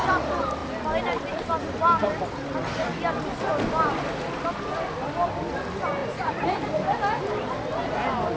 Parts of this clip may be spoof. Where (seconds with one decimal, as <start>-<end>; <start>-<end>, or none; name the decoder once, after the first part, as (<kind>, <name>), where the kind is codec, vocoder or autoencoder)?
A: 6.0-6.6 (vocoder, BigVGAN v2)